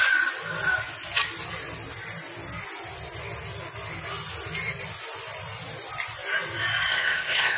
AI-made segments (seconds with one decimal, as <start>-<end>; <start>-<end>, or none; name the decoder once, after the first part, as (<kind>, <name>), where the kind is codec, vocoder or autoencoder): 6.9-7.6 (codec, ZipCodec)